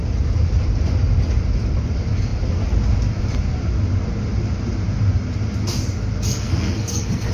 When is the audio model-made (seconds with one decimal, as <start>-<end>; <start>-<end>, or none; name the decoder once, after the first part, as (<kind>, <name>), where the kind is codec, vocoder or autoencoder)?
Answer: 6.3-7.3 (codec, SNAC)